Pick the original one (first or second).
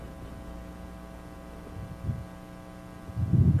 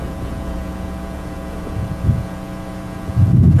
first